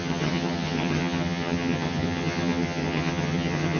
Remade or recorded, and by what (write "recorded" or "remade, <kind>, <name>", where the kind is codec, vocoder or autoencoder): remade, vocoder, HiFi-GAN